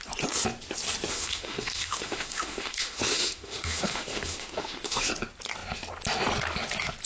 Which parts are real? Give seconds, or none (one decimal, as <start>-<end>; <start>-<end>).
0.0-1.1; 5.1-7.0